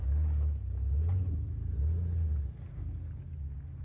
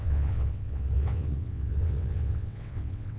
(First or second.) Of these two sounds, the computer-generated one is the second